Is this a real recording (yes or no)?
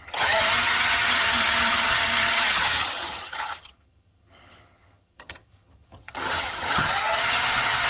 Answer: no